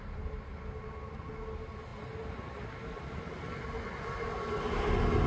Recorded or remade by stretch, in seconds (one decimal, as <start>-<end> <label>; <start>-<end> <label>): 0.0-5.3 recorded